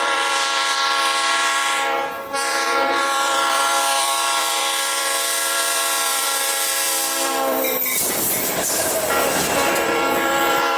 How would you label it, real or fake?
fake